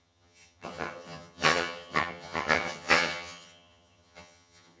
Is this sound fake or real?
fake